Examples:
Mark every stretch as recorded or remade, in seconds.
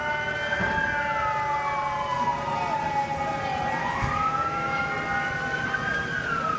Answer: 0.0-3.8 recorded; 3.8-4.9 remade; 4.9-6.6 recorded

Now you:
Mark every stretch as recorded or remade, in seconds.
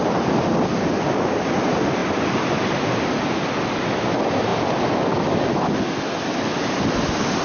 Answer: 0.0-7.4 recorded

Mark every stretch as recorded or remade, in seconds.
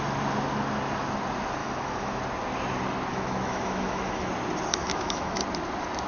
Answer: 0.0-1.6 recorded; 1.6-2.2 remade; 2.2-3.1 recorded; 3.1-4.3 remade; 4.3-4.8 recorded; 4.8-5.4 remade; 5.4-6.1 recorded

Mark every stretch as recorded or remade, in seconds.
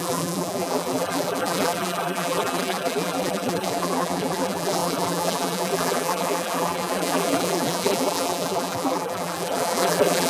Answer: 0.0-10.3 remade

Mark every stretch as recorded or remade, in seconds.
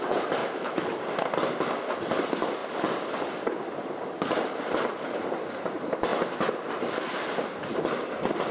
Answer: 0.0-0.4 recorded; 0.4-1.0 remade; 1.0-8.5 recorded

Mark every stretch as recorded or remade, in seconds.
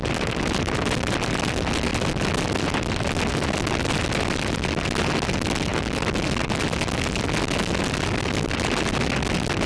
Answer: 0.0-9.7 recorded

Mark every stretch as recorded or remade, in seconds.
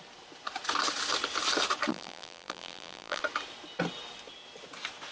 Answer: 0.0-1.9 recorded; 1.9-3.2 remade; 3.2-5.1 recorded